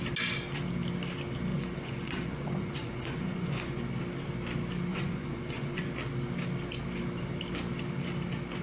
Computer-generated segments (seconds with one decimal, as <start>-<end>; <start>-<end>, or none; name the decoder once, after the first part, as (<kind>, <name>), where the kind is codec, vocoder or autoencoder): 1.5-3.8 (vocoder, Vocos); 4.9-5.9